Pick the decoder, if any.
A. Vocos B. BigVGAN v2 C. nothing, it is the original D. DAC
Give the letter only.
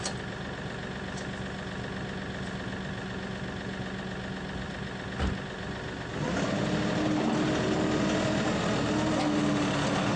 C